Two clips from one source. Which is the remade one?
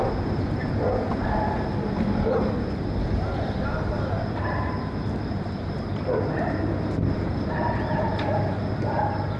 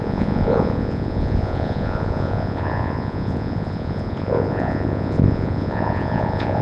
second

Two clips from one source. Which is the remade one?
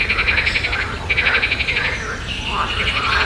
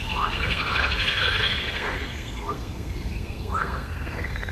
second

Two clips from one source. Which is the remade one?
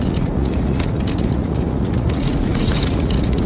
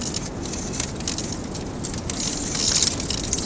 first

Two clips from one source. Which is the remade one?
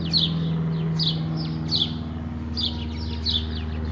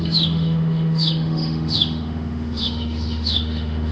second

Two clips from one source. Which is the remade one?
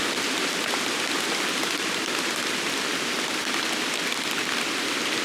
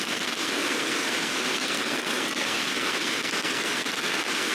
second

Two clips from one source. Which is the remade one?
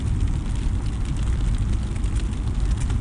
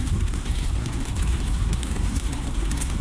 second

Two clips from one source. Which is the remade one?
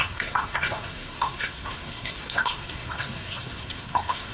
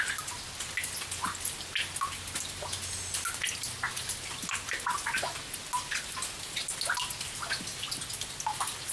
first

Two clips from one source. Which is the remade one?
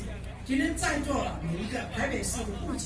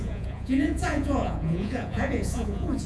second